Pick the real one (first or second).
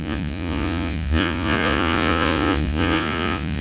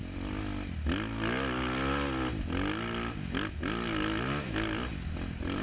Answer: second